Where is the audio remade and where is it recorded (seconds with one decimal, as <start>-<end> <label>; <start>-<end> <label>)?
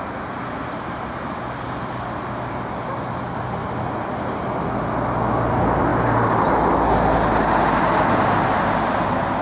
0.0-9.4 recorded